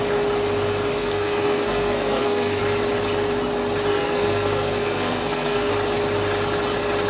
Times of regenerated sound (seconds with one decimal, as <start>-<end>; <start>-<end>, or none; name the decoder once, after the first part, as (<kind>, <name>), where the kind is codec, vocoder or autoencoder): 1.0-2.6 (codec, SNAC); 3.9-5.7